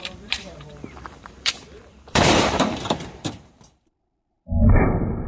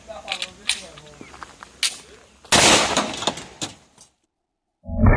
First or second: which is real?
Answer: second